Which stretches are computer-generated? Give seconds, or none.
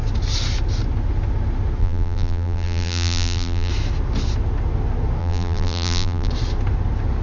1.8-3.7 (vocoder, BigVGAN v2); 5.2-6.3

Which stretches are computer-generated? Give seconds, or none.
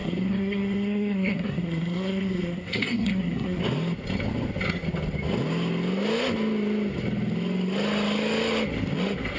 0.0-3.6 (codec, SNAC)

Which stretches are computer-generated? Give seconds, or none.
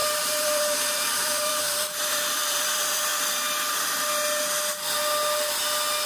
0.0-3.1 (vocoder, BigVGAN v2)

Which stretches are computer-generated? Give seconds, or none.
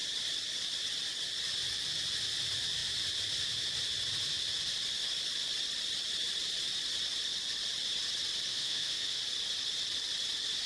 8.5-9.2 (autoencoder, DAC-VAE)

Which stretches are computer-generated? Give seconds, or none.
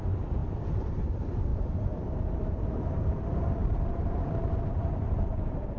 0.0-0.4 (vocoder, BigVGAN v2); 0.9-5.8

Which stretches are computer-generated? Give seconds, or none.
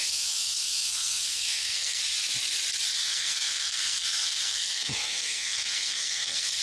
0.0-2.0 (codec, SNAC); 3.0-6.6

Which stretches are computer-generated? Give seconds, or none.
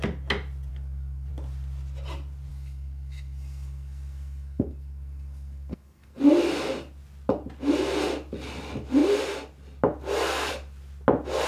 0.7-1.3 (codec, SNAC); 2.5-6.2